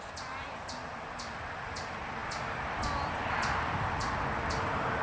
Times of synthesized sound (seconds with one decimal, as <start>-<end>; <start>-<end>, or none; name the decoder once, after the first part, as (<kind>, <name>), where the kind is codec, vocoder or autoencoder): 0.0-5.0 (vocoder, BigVGAN v2)

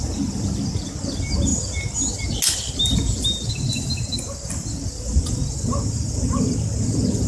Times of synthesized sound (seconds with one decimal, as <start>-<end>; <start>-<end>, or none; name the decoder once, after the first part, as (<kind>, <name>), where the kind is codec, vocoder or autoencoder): none

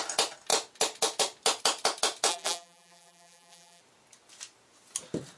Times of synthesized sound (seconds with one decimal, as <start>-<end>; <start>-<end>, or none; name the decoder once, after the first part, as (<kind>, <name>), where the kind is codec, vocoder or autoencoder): 2.3-3.8 (vocoder, BigVGAN v2)

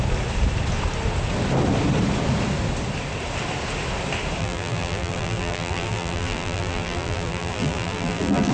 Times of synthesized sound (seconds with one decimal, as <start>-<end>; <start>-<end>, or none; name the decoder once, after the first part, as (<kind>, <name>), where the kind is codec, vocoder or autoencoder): 4.4-8.5 (vocoder, BigVGAN v2)

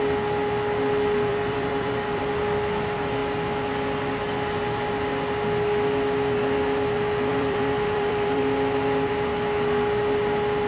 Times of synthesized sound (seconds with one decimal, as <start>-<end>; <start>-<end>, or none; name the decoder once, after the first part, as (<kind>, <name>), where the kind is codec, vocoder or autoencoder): 1.3-2.3 (vocoder, BigVGAN v2); 7.3-8.4

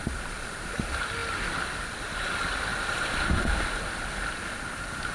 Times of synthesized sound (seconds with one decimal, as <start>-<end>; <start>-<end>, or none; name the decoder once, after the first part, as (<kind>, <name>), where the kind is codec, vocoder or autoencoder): none